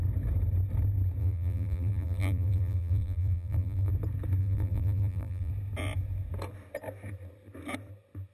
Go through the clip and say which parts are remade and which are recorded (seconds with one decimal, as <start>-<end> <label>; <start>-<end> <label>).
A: 0.0-1.2 recorded; 1.2-3.9 remade; 3.9-4.4 recorded; 4.4-5.5 remade; 5.5-8.3 recorded